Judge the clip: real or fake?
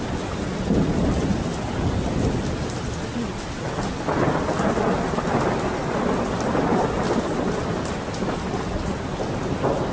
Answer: real